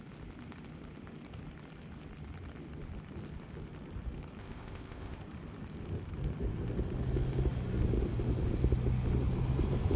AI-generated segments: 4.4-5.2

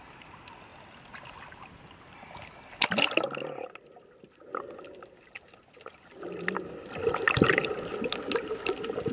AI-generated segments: none

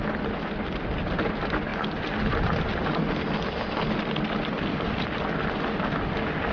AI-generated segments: none

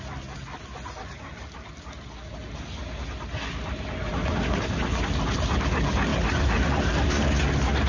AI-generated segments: none